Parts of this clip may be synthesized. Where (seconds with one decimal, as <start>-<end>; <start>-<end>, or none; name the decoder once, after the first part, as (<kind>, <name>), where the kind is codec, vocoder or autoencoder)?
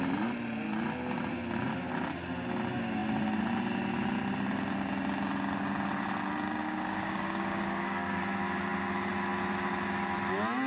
6.6-8.2 (codec, DAC)